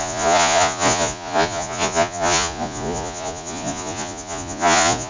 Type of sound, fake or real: fake